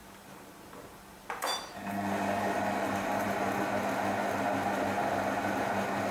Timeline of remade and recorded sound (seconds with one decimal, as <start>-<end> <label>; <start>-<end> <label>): 0.0-3.7 remade; 3.7-6.1 recorded